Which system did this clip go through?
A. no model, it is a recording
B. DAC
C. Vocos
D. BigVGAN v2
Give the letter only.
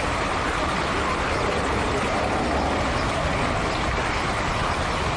D